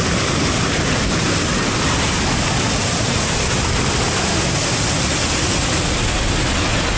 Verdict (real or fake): real